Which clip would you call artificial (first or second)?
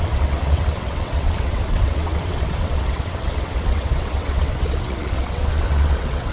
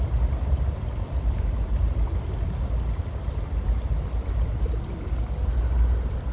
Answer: first